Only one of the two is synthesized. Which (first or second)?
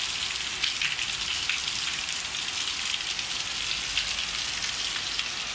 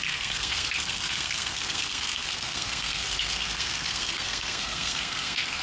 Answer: second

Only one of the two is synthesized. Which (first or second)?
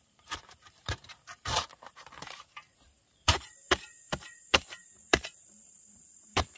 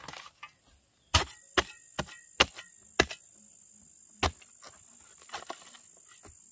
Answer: first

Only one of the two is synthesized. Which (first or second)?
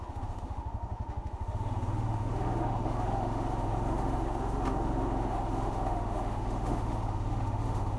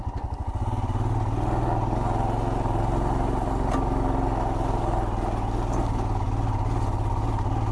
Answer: first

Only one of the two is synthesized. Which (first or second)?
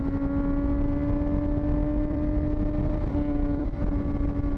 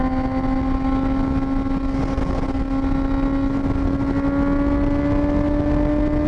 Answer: first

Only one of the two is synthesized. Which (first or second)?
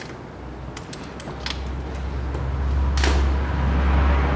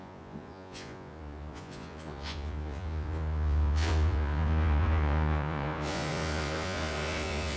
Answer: second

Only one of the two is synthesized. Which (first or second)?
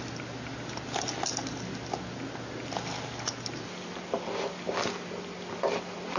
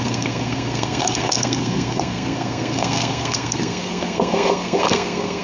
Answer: second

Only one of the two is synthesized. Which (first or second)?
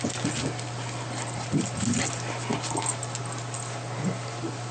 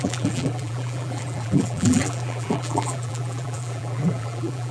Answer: second